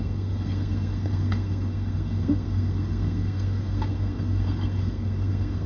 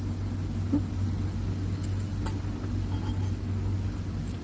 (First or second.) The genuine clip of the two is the second